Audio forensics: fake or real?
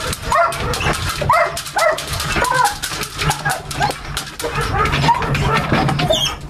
real